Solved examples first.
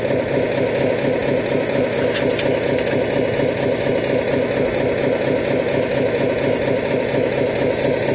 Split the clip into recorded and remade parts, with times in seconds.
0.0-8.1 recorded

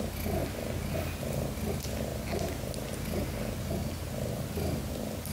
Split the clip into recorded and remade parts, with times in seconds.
0.0-5.3 recorded

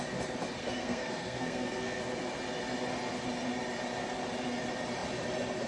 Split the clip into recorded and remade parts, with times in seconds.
0.0-0.6 recorded; 0.6-2.0 remade; 2.0-5.7 recorded

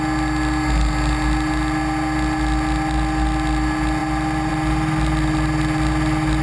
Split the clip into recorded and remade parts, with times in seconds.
0.0-6.4 recorded

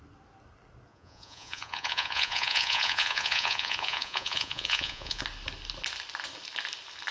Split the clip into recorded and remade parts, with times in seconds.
0.0-0.9 recorded; 0.9-5.2 remade; 5.2-7.1 recorded